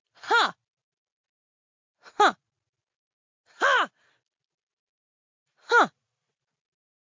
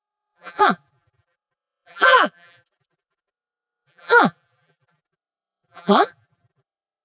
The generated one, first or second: second